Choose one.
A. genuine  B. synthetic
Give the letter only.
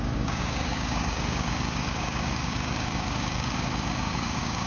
B